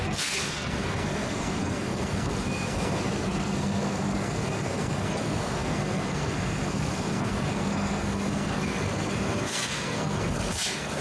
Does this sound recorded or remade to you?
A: remade